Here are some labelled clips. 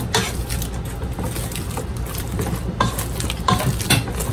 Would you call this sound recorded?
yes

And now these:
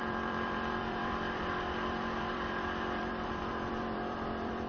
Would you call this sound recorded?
no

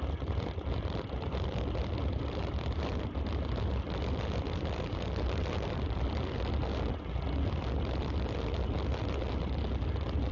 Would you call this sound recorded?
yes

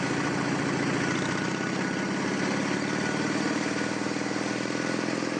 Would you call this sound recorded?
yes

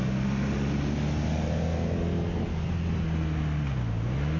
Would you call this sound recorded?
yes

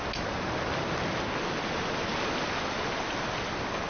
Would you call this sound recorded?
yes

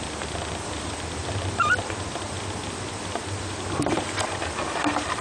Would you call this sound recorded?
no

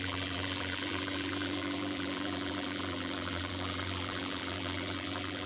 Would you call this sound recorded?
no